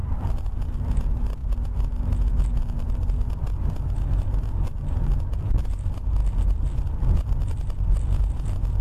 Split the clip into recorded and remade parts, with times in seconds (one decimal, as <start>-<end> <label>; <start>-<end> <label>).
0.0-0.6 remade; 0.6-8.8 recorded